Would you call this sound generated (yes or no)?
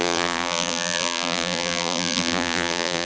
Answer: yes